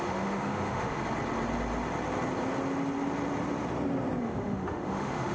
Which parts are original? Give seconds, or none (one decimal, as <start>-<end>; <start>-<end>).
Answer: 1.0-4.2